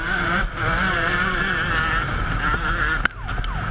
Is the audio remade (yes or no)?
no